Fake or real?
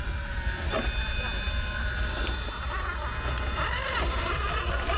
real